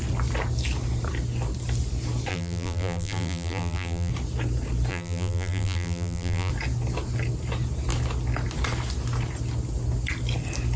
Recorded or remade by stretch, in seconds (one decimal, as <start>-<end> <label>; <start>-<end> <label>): 0.0-2.3 recorded; 2.3-4.1 remade; 4.1-4.9 recorded; 4.9-6.5 remade; 6.5-10.8 recorded

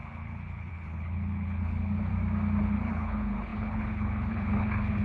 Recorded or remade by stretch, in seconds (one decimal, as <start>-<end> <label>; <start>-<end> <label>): 0.0-2.1 remade; 2.1-2.6 recorded; 2.6-5.0 remade

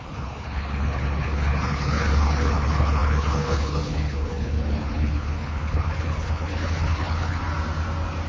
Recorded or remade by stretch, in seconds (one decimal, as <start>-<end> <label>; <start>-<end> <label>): 0.0-7.4 remade; 7.4-8.3 recorded

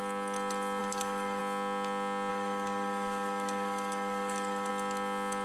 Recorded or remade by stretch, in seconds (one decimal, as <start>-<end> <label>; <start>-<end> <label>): 0.0-0.8 recorded; 0.8-1.4 remade; 1.4-2.3 recorded; 2.3-4.7 remade; 4.7-5.4 recorded